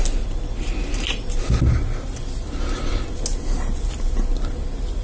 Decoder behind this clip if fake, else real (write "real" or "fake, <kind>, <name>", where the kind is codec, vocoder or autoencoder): real